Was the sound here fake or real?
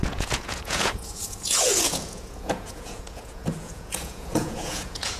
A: fake